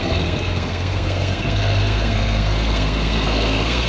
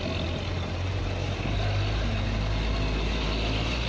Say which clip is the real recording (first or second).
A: second